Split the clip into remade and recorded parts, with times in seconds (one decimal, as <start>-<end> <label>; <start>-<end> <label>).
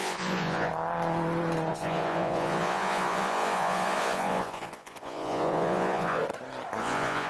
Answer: 0.0-0.7 remade; 0.7-1.7 recorded; 1.7-6.2 remade; 6.2-6.8 recorded; 6.8-7.3 remade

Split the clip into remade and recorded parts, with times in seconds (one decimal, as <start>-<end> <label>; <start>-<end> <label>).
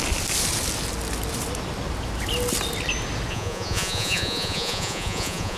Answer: 0.0-3.3 recorded; 3.3-5.6 remade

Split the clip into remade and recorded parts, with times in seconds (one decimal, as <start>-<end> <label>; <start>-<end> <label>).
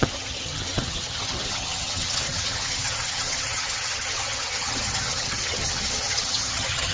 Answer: 0.0-6.9 remade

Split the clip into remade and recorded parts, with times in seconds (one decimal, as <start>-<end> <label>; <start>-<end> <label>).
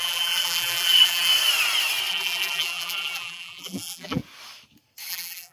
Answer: 0.0-1.3 remade; 1.3-2.1 recorded; 2.1-4.2 remade; 4.2-5.1 recorded; 5.1-5.5 remade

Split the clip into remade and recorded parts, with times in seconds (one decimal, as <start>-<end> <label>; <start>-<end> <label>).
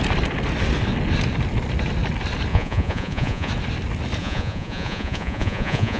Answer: 0.0-2.5 recorded; 2.5-3.5 remade; 3.5-4.2 recorded; 4.2-6.0 remade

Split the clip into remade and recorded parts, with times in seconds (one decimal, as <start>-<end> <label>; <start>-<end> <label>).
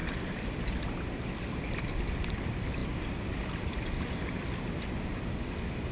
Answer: 0.0-5.9 recorded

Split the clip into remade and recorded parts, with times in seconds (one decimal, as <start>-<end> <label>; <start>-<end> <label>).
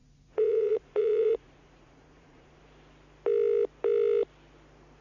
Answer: 0.0-2.6 remade; 2.6-5.0 recorded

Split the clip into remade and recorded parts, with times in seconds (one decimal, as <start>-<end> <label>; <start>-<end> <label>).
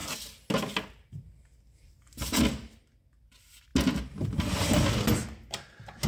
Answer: 0.0-6.1 recorded